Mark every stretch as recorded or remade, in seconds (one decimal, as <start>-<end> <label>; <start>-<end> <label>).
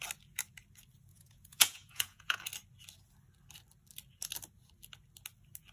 0.0-1.1 recorded; 1.1-2.4 remade; 2.4-5.7 recorded